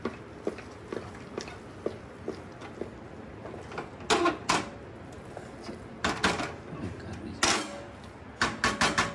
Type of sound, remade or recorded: recorded